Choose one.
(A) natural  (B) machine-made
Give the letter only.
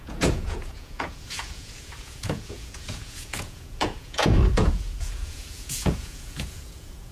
B